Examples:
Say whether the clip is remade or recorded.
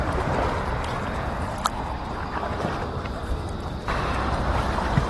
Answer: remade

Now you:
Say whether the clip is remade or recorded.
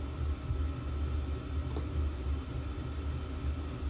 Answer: recorded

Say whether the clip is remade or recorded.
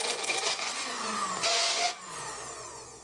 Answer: remade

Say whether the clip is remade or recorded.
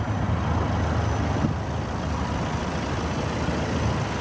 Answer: recorded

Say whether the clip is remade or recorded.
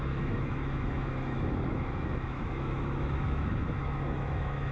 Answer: remade